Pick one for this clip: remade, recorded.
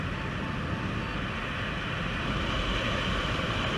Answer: recorded